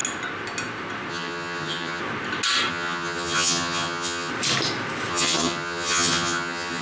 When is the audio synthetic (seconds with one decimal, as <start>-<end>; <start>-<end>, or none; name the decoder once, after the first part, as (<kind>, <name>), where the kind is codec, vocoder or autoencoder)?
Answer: 1.1-2.0 (vocoder, HiFi-GAN); 2.7-4.3; 5.1-6.8

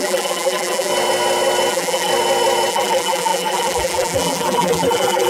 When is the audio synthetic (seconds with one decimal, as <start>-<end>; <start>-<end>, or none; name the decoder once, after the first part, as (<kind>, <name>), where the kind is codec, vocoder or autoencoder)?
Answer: 0.0-0.9 (vocoder, BigVGAN v2); 1.7-2.1; 2.7-5.3